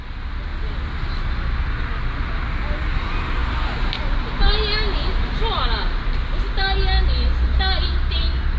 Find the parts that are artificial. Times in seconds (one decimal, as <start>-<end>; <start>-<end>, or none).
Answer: none